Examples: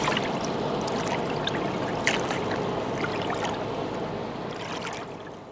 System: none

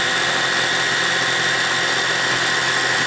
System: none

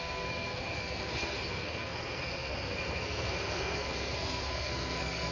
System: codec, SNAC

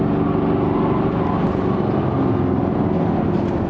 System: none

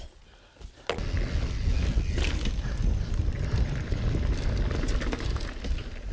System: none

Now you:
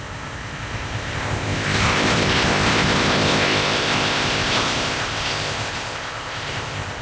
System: codec, ZipCodec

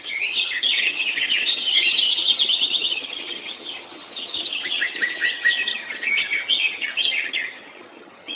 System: vocoder, HiFi-GAN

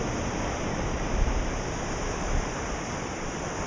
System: vocoder, BigVGAN v2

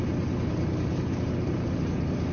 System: vocoder, BigVGAN v2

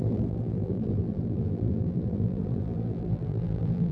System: vocoder, BigVGAN v2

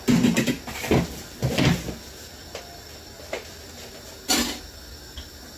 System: none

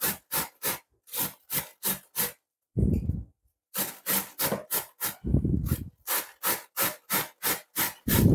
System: none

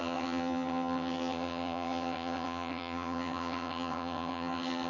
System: vocoder, HiFi-GAN